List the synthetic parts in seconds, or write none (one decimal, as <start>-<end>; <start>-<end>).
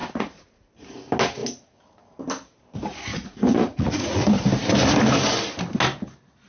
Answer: 0.0-0.7; 3.1-4.3